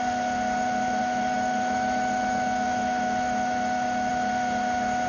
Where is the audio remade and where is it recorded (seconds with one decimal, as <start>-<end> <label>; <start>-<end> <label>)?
0.0-1.0 recorded; 1.0-4.1 remade; 4.1-5.1 recorded